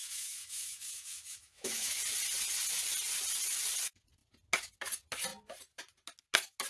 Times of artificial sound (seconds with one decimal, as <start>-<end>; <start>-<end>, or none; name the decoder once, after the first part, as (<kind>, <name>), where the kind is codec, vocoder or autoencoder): 0.0-2.0 (autoencoder, DAC-VAE)